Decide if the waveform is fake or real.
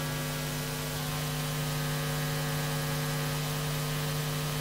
real